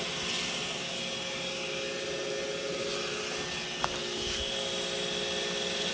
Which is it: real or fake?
real